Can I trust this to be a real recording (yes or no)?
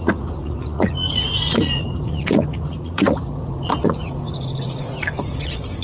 no